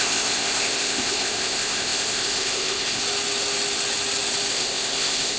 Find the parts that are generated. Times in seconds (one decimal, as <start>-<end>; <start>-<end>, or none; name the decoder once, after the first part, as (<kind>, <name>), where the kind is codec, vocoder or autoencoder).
0.0-3.0 (codec, ZipCodec); 4.5-5.4